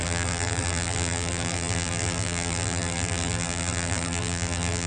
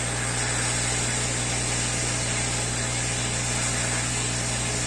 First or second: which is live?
second